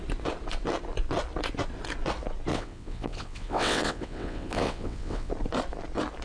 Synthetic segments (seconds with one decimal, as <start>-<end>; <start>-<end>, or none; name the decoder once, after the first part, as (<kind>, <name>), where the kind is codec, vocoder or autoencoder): 2.5-5.3 (vocoder, WaveNeXt)